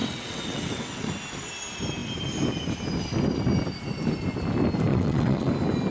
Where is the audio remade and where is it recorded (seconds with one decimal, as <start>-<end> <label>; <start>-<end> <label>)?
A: 0.0-1.1 remade; 1.1-4.9 recorded; 4.9-5.5 remade; 5.5-5.9 recorded